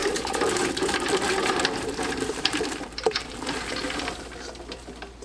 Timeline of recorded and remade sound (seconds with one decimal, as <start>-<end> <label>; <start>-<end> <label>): 0.0-3.1 remade; 3.1-5.2 recorded